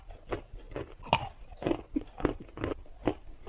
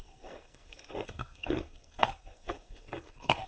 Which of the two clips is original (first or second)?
first